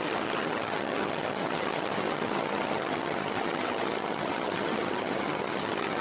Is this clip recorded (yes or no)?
no